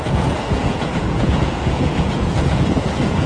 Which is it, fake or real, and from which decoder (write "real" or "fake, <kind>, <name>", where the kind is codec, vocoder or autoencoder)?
fake, vocoder, Vocos